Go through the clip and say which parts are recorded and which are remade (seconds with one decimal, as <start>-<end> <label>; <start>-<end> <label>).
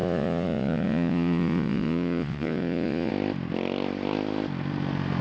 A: 0.0-3.1 remade; 3.1-5.2 recorded